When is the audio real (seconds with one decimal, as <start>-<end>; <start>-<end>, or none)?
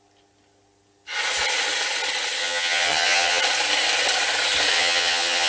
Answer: 0.0-2.4; 3.4-4.7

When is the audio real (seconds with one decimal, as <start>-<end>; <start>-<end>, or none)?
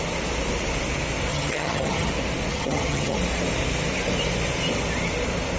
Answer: 0.0-1.3; 2.1-2.5; 3.2-5.6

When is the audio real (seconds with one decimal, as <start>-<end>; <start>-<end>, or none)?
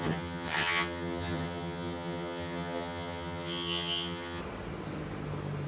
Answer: 4.4-5.7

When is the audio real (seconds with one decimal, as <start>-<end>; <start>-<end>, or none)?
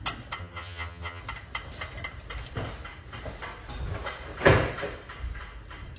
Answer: 0.0-0.4; 1.2-6.0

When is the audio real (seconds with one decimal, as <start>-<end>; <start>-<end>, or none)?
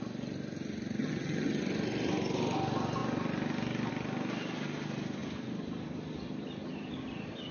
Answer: 0.0-1.0; 1.6-7.5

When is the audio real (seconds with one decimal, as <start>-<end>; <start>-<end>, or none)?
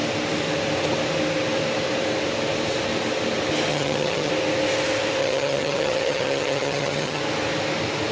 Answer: 0.0-3.7; 4.3-5.2; 7.2-8.1